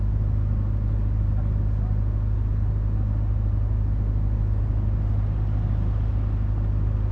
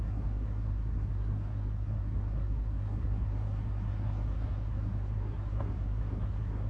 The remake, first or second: second